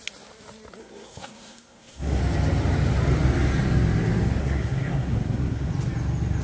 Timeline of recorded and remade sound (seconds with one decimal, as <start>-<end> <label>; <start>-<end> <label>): 0.0-0.8 recorded; 0.8-2.2 remade; 2.2-4.4 recorded; 4.4-5.7 remade; 5.7-6.4 recorded